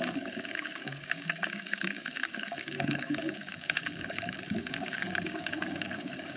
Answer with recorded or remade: remade